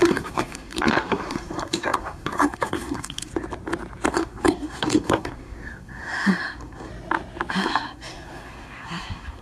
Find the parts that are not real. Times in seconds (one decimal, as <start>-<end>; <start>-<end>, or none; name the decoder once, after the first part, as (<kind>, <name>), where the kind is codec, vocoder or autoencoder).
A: 0.0-3.3 (codec, SNAC); 4.1-6.9; 7.5-9.4